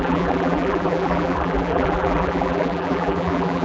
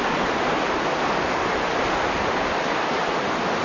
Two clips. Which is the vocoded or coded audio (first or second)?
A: first